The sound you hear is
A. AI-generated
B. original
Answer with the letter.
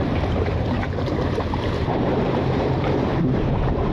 A